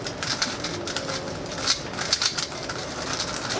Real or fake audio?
real